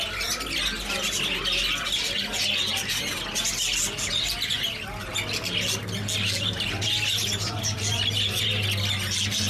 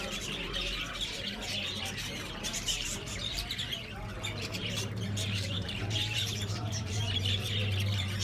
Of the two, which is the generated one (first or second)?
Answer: second